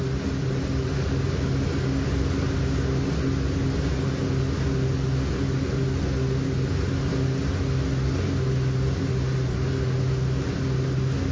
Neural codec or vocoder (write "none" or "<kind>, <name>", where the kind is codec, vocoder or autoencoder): none